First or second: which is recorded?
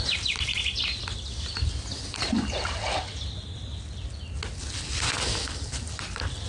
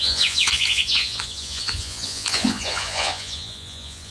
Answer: first